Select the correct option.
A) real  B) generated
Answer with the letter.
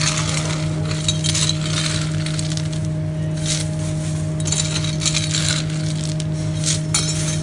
A